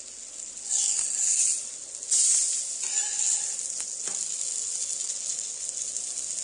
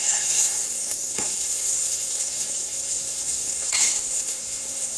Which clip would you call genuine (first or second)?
first